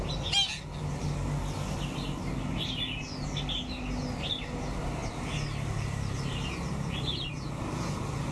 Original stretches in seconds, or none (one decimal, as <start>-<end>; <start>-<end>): 0.0-8.3